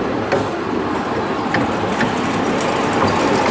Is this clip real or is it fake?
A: real